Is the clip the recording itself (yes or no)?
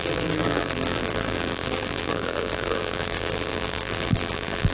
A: no